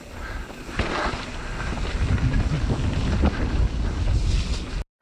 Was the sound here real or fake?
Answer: real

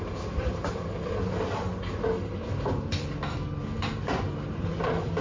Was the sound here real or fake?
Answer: real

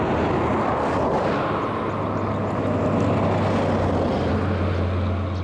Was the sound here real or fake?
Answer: real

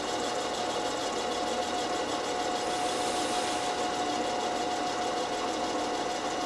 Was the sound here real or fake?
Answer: real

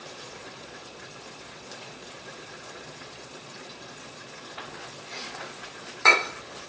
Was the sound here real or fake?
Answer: fake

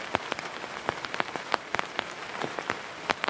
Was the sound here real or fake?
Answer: fake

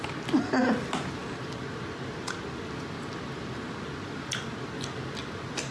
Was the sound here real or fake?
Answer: real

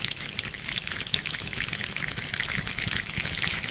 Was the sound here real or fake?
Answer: fake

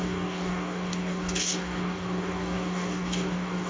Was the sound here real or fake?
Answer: fake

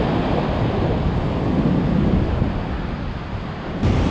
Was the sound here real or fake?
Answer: real